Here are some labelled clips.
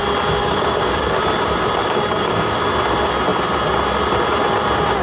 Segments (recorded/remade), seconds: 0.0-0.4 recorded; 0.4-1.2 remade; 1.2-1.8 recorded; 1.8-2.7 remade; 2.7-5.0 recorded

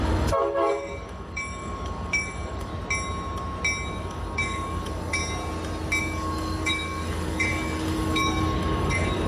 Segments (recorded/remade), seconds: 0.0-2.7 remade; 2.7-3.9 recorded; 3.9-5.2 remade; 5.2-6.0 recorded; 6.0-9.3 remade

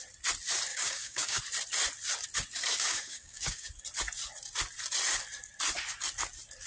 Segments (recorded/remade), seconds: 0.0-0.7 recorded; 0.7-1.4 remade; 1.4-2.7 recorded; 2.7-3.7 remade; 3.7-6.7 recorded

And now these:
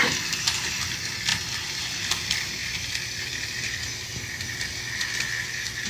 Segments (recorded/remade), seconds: 0.0-5.9 recorded